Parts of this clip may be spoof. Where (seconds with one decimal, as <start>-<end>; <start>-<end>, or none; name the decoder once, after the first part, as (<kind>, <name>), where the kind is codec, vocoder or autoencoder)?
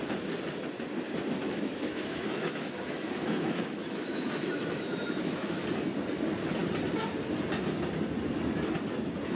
1.4-5.6 (autoencoder, DAC-VAE)